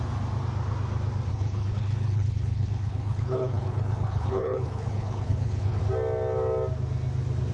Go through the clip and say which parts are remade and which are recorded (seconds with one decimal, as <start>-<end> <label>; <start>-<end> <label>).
0.0-1.3 recorded; 1.3-5.8 remade; 5.8-7.5 recorded